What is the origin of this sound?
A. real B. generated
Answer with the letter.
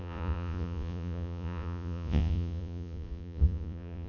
B